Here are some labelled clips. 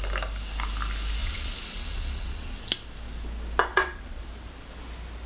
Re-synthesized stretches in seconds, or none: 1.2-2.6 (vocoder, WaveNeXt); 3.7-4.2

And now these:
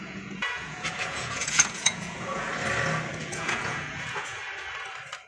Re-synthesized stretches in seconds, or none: 0.0-2.5 (vocoder, Vocos); 3.2-4.4

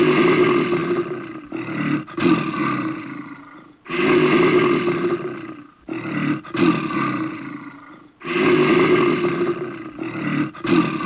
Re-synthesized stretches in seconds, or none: none